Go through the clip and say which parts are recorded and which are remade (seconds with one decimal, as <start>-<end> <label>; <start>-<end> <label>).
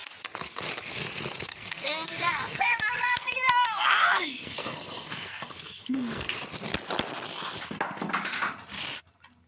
0.0-1.5 recorded; 1.5-6.4 remade; 6.4-9.5 recorded